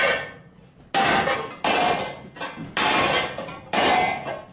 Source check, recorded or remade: recorded